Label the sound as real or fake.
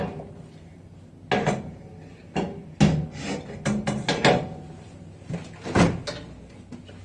real